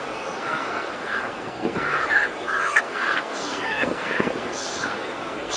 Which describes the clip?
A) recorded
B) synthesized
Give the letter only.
B